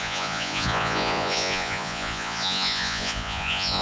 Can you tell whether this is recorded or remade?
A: remade